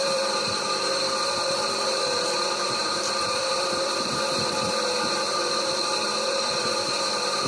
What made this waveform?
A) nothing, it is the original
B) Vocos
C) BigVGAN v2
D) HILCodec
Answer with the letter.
C